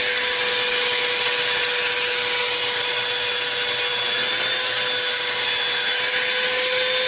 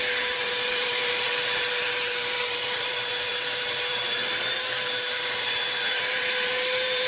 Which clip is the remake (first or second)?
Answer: second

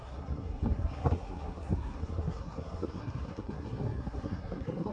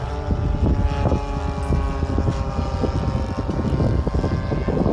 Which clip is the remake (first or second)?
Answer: first